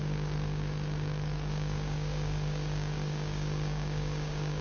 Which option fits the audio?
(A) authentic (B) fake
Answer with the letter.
B